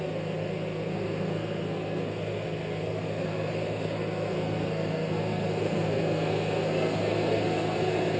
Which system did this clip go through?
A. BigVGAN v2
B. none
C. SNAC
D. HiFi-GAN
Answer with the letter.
C